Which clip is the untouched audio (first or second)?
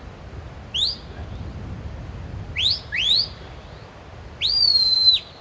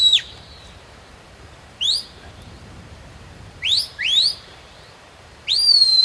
first